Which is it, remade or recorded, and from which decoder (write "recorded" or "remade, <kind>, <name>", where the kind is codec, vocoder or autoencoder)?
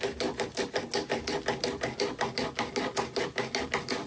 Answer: recorded